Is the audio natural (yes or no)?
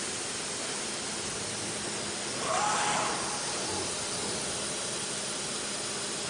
yes